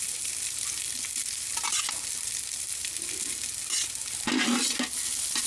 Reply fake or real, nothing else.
real